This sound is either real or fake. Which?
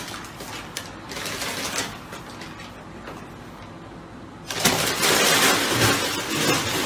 real